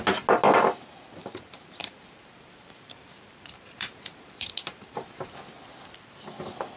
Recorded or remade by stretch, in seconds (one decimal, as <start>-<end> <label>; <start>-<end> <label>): 0.0-1.2 recorded; 1.2-5.3 remade; 5.3-6.8 recorded